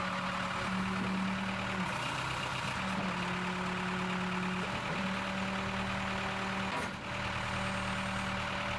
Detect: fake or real real